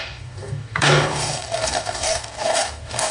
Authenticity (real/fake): fake